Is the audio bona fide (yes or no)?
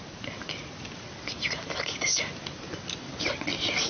yes